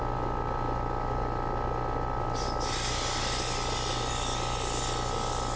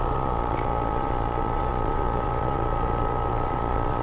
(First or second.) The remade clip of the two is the second